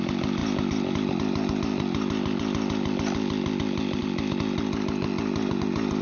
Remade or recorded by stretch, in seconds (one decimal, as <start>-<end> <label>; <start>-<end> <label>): 0.0-6.0 recorded